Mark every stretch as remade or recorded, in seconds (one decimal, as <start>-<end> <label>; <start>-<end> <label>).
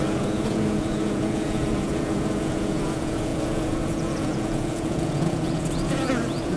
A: 0.0-6.6 remade